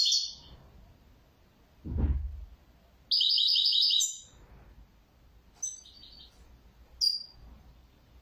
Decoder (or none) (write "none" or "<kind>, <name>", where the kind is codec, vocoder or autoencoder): none